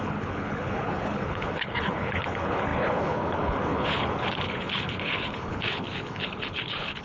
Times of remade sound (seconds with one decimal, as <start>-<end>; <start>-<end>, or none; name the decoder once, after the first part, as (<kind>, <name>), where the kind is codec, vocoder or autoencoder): 0.0-7.0 (codec, HILCodec)